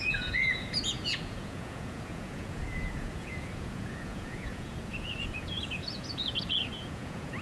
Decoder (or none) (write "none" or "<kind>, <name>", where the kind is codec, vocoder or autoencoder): vocoder, Vocos